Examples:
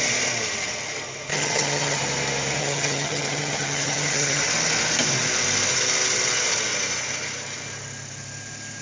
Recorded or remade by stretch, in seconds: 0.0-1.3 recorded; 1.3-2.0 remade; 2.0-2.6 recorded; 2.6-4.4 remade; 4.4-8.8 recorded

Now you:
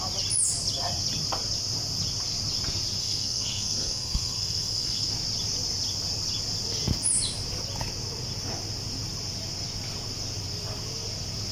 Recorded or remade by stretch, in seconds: 0.0-3.0 recorded; 3.0-5.1 remade; 5.1-11.5 recorded

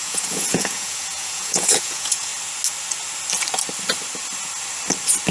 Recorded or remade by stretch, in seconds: 0.0-2.3 remade; 2.3-5.3 recorded